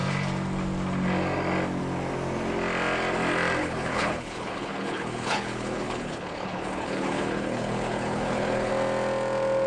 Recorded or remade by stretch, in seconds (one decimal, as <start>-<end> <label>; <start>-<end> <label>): 0.0-3.6 recorded; 3.6-8.7 remade; 8.7-9.7 recorded